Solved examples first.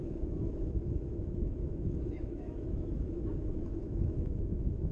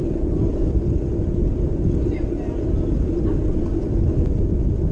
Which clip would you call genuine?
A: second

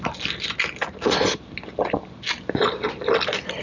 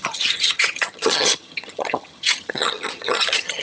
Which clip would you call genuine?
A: first